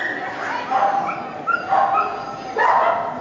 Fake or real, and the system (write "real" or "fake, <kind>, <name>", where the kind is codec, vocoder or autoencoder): real